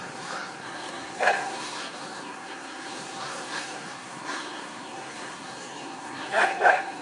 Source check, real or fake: fake